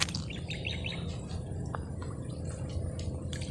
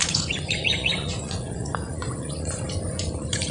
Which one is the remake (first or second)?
second